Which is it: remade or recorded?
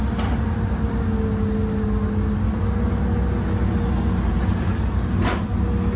recorded